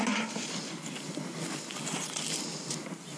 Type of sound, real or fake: real